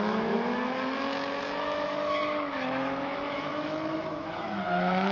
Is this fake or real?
fake